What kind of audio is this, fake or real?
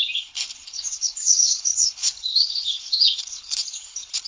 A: fake